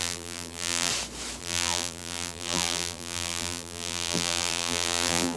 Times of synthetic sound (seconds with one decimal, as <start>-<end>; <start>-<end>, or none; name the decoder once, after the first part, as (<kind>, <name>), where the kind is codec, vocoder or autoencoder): 0.0-0.9 (vocoder, BigVGAN v2); 1.4-5.4